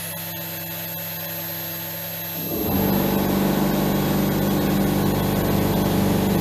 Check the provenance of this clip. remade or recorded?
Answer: recorded